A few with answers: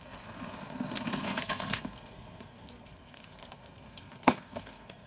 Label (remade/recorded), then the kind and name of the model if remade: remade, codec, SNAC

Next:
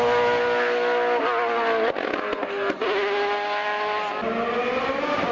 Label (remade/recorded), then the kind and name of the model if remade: recorded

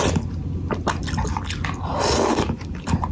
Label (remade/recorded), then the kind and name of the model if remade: recorded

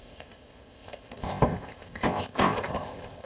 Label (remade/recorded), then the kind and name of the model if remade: remade, codec, ZipCodec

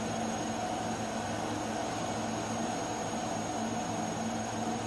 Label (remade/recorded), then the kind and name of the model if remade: recorded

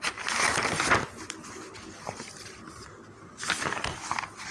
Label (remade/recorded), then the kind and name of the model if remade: remade, vocoder, BigVGAN v2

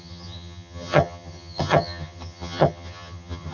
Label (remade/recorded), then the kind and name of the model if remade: remade, vocoder, HiFi-GAN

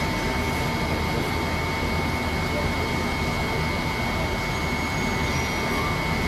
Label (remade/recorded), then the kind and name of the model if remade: recorded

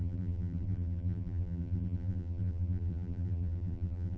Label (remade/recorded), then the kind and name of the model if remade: remade, vocoder, BigVGAN v2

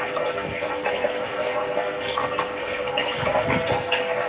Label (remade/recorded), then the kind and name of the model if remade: remade, codec, SNAC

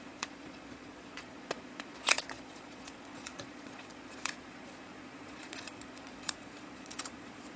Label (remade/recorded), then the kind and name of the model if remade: remade, vocoder, Vocos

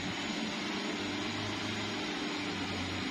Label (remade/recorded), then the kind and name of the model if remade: recorded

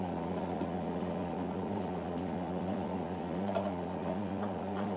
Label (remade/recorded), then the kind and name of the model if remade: remade, vocoder, Vocos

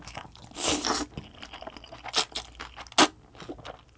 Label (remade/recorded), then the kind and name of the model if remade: recorded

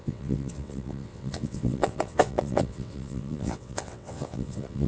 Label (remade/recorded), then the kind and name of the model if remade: remade, vocoder, WaveNeXt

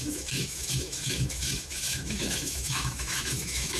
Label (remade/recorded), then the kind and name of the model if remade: remade, autoencoder, DAC-VAE